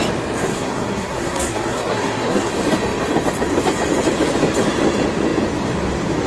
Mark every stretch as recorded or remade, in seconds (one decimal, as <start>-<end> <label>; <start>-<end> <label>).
0.0-0.5 recorded; 0.5-2.5 remade; 2.5-6.3 recorded